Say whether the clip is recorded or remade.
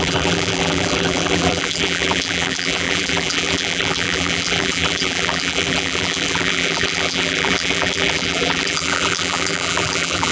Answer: remade